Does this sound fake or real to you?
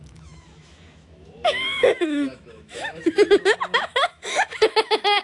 fake